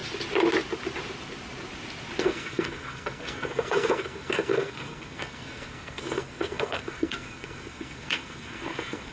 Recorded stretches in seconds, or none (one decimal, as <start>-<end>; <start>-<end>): 0.0-2.2